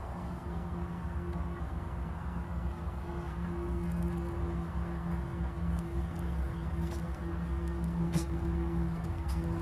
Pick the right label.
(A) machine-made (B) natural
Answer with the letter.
A